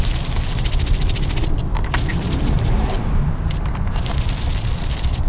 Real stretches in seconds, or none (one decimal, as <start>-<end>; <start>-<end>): none